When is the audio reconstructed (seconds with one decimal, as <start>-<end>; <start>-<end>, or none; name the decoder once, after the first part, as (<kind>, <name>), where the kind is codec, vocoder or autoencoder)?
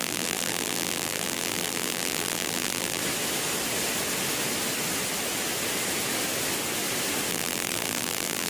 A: 0.0-3.0 (vocoder, BigVGAN v2); 7.3-8.5